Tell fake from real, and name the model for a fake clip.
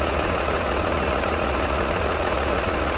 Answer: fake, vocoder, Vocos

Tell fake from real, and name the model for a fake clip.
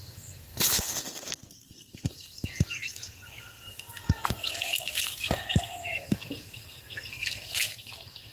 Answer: fake, codec, SNAC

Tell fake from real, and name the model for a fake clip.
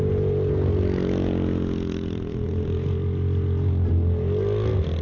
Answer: real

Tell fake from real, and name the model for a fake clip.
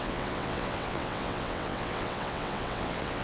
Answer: fake, vocoder, WaveNeXt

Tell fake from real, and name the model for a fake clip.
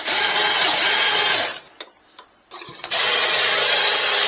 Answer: real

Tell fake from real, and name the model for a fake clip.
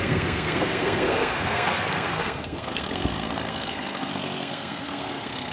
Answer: fake, codec, SNAC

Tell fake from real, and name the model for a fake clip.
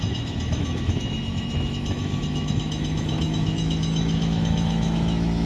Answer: fake, autoencoder, DAC-VAE